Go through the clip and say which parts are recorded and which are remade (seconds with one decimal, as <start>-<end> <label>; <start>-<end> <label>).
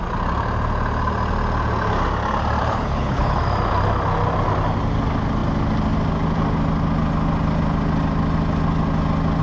0.0-2.6 recorded; 2.6-3.4 remade; 3.4-9.4 recorded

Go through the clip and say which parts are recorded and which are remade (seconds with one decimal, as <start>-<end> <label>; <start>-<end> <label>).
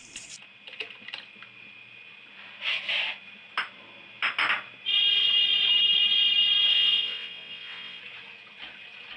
0.0-6.7 recorded; 6.7-8.0 remade; 8.0-9.2 recorded